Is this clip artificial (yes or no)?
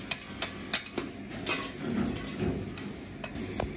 no